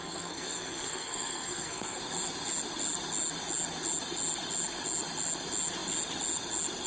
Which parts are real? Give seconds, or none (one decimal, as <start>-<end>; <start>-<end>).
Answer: 2.0-6.9